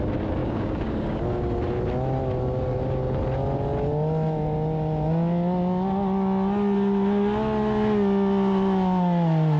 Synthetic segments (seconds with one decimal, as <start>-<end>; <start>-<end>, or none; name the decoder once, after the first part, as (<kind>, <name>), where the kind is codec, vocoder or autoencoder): 0.4-1.2 (codec, DAC)